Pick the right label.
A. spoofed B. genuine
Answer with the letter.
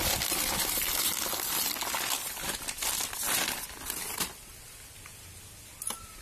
B